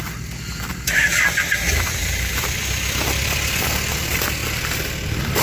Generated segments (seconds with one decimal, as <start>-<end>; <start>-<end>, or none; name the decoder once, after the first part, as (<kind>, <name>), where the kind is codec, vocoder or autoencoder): 0.0-4.4 (vocoder, BigVGAN v2); 5.0-5.4